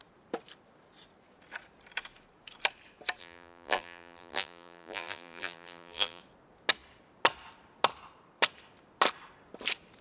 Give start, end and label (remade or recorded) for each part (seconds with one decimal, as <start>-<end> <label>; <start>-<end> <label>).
0.0-3.2 recorded; 3.2-6.2 remade; 6.2-10.0 recorded